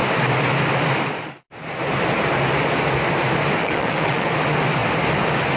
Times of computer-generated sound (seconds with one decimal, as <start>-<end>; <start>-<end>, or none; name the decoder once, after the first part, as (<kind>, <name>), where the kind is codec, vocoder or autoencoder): 3.6-4.3 (vocoder, Vocos)